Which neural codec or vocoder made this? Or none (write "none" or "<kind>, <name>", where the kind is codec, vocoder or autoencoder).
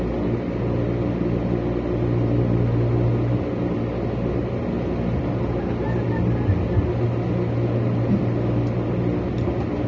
none